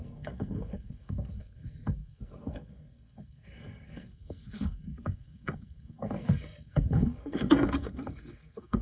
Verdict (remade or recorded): remade